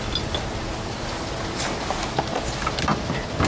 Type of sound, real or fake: real